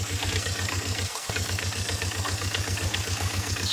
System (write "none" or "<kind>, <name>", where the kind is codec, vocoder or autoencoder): codec, SNAC